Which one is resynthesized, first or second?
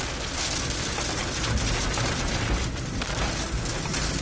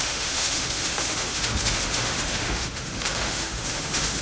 second